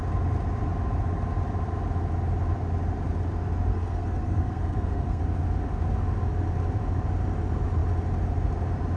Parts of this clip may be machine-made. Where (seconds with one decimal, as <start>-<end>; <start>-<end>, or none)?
3.7-5.2